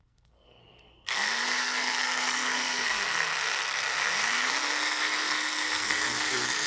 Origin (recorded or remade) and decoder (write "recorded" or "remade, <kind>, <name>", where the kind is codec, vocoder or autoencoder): remade, codec, SNAC